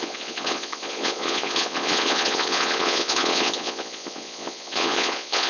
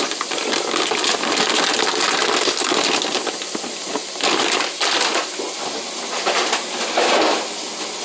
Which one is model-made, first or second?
first